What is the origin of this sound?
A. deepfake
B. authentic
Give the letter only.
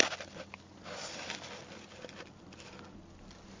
B